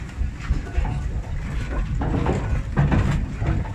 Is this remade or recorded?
recorded